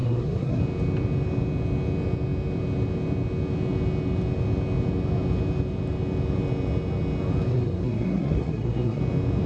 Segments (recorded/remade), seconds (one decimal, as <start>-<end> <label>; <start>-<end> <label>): 0.0-0.6 remade; 0.6-7.5 recorded; 7.5-9.0 remade; 9.0-9.5 recorded